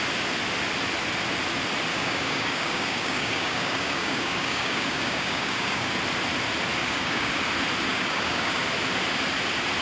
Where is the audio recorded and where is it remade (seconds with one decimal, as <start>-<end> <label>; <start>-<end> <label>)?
0.0-1.9 recorded; 1.9-5.9 remade; 5.9-6.8 recorded; 6.8-7.3 remade; 7.3-7.9 recorded; 7.9-8.6 remade; 8.6-9.8 recorded